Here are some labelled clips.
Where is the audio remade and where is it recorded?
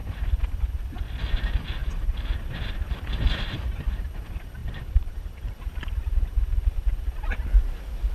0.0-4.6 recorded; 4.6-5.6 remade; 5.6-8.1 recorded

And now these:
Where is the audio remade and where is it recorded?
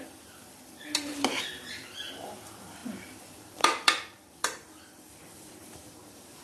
0.0-5.8 remade; 5.8-6.4 recorded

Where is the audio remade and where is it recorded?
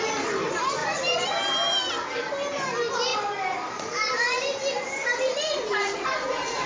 0.0-0.8 recorded; 0.8-1.9 remade; 1.9-3.1 recorded; 3.1-6.7 remade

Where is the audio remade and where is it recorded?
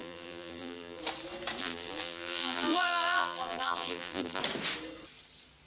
0.0-1.0 remade; 1.0-1.6 recorded; 1.6-4.4 remade; 4.4-5.7 recorded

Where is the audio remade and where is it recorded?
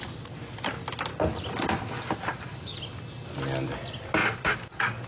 0.0-1.1 recorded; 1.1-3.0 remade; 3.0-4.2 recorded; 4.2-5.1 remade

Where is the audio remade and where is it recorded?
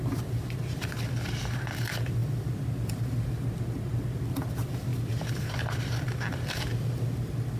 0.0-2.2 remade; 2.2-3.9 recorded; 3.9-6.7 remade; 6.7-7.6 recorded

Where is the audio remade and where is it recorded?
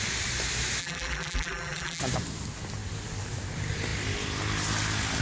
0.0-0.8 recorded; 0.8-2.0 remade; 2.0-5.2 recorded